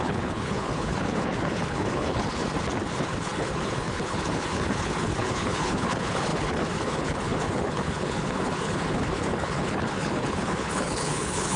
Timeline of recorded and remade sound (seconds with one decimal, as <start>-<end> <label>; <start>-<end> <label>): 0.0-2.4 remade; 2.4-2.9 recorded; 2.9-11.6 remade